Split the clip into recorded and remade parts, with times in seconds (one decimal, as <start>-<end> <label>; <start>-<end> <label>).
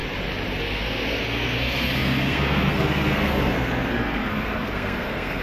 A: 0.0-0.6 recorded; 0.6-5.4 remade